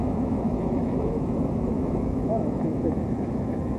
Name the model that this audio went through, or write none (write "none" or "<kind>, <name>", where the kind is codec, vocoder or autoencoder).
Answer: autoencoder, DAC-VAE